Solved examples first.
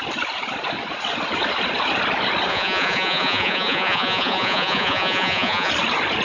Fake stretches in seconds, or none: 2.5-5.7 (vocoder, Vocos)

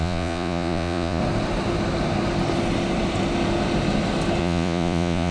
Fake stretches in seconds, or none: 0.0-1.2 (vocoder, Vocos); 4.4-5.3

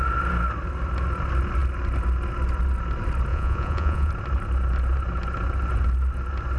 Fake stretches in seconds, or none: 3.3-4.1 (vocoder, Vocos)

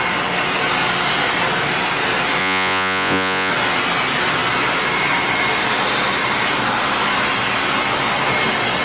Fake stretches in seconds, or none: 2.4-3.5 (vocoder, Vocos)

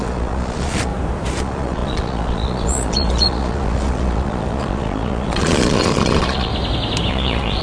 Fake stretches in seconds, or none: 0.0-0.9 (vocoder, Vocos); 1.4-6.5; 7.1-7.6

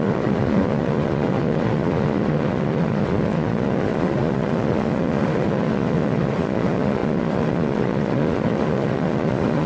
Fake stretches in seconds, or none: 0.0-9.7 (vocoder, Vocos)

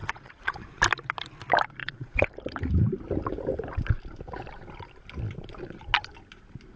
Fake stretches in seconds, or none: 0.0-0.8 (vocoder, Vocos); 1.8-2.3

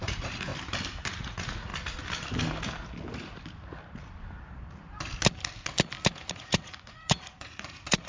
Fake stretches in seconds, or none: 0.0-0.5 (vocoder, Vocos); 1.1-1.7; 6.3-8.1